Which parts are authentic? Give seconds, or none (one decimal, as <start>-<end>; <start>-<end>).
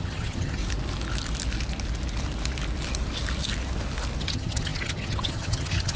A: 0.6-4.2